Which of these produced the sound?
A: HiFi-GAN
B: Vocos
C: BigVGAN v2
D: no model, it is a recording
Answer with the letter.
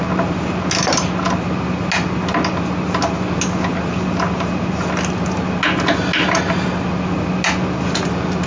D